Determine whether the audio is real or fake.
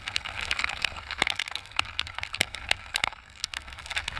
fake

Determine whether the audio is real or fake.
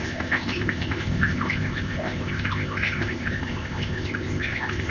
fake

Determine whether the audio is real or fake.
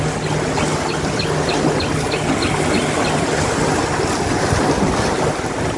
real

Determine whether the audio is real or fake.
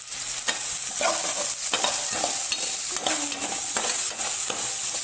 real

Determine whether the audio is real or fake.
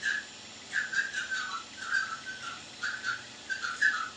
real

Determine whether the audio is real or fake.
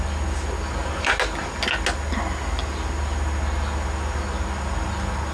real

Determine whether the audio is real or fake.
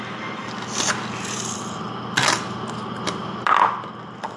real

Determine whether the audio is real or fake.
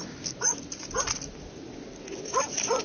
real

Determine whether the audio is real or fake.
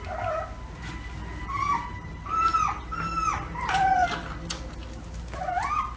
real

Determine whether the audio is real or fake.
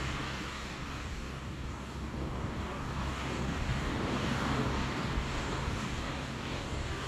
fake